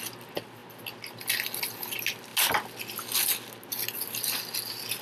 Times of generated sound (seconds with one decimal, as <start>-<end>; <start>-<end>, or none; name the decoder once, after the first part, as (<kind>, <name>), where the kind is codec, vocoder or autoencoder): none